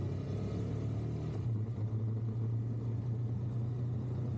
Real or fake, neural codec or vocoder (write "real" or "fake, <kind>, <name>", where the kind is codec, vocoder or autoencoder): real